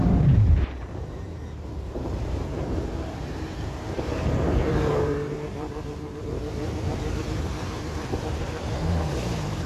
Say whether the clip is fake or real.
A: fake